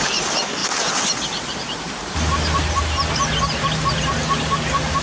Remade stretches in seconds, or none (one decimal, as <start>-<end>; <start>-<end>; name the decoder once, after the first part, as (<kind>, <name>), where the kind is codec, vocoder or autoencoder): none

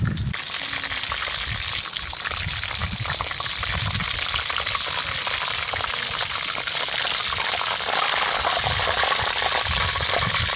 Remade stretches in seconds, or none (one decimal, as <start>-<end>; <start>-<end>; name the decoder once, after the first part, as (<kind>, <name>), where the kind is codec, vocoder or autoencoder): none

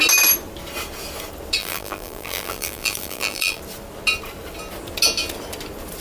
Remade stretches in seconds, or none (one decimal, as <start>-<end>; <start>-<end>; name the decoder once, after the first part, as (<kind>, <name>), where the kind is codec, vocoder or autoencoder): 1.6-3.6 (vocoder, BigVGAN v2)